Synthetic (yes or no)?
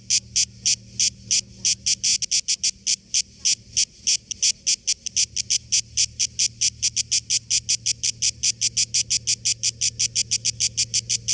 no